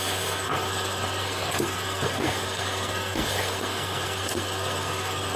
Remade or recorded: remade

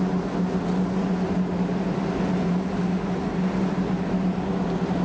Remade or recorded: recorded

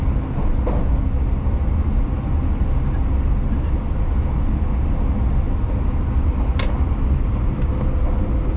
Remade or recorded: recorded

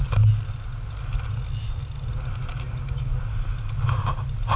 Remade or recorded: recorded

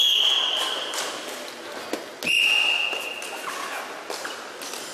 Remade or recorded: recorded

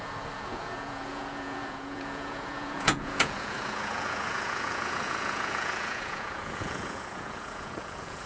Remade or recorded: remade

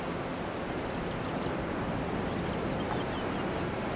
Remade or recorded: recorded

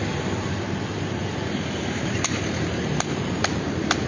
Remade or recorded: remade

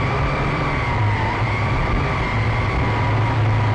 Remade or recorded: remade